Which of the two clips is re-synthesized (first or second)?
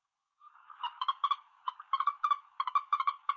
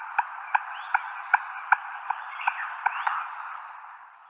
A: first